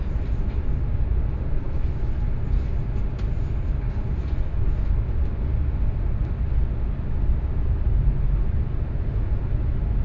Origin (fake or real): real